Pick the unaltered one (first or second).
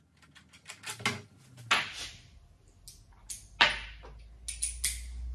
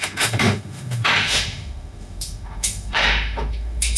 first